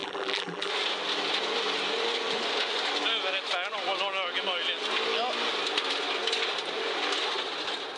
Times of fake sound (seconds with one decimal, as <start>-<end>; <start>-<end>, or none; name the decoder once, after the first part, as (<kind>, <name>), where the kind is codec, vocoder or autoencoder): 0.0-0.7 (vocoder, BigVGAN v2)